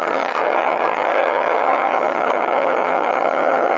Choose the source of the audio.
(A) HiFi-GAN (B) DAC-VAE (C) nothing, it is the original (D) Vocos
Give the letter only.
A